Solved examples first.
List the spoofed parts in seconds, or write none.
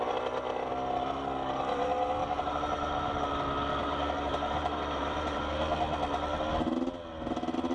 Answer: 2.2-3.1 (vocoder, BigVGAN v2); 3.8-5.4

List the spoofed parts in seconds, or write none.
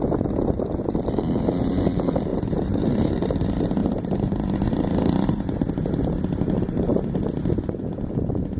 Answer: 2.3-3.1 (vocoder, BigVGAN v2); 3.8-6.0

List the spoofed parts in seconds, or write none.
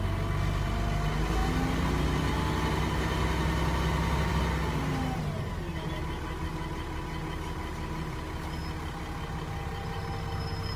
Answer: none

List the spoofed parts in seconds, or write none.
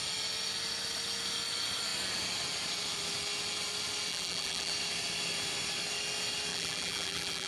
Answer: 4.1-4.7 (vocoder, BigVGAN v2); 6.5-7.5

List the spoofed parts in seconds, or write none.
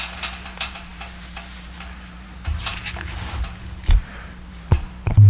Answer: 0.0-5.3 (vocoder, BigVGAN v2)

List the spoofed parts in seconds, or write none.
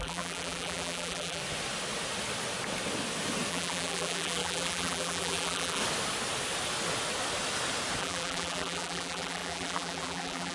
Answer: 0.0-1.4 (vocoder, BigVGAN v2); 3.5-5.8; 8.0-10.5